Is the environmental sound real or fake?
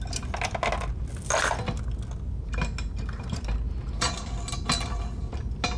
real